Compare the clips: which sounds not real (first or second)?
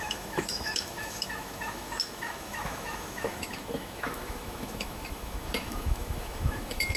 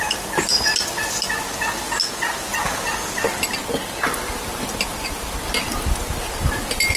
first